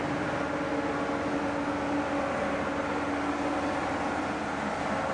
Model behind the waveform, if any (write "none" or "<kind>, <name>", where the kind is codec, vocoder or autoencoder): none